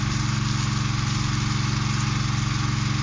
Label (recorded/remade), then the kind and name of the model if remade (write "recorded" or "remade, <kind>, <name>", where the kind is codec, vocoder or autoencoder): recorded